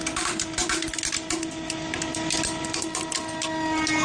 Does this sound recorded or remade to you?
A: recorded